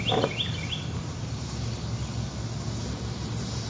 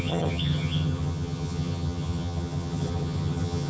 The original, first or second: first